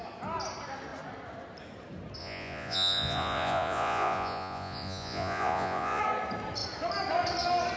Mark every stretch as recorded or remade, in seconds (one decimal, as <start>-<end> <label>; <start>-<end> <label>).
0.0-2.2 recorded; 2.2-6.0 remade; 6.0-7.8 recorded